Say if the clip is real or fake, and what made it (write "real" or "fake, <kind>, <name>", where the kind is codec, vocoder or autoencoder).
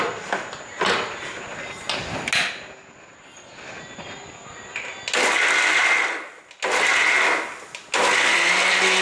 real